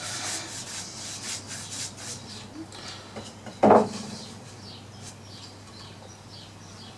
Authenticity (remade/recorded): recorded